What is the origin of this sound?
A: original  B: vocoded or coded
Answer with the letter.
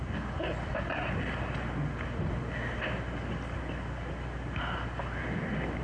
A